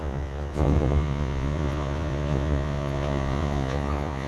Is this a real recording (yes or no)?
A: no